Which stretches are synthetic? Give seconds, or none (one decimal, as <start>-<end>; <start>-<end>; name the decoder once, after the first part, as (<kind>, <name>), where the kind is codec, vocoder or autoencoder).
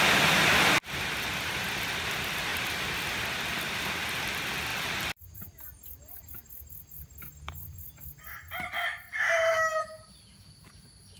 2.5-3.2 (vocoder, BigVGAN v2); 4.7-9.3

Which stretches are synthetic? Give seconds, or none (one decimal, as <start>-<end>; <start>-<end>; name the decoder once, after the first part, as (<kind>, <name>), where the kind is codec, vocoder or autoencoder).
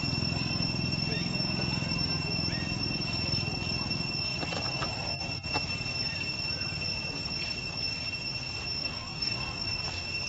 8.8-9.7 (codec, DAC)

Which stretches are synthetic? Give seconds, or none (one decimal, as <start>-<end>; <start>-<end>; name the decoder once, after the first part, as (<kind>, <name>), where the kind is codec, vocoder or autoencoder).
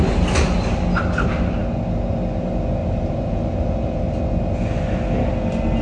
2.8-4.2 (vocoder, BigVGAN v2)